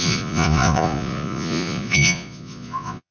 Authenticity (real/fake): fake